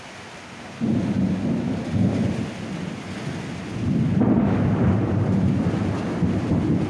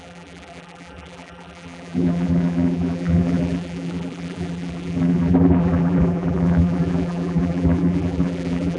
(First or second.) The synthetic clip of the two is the second